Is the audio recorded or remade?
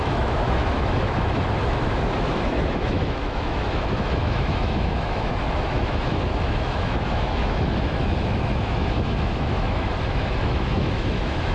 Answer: remade